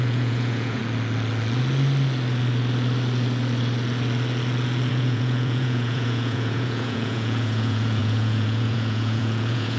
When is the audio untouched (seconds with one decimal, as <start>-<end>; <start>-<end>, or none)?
0.8-4.9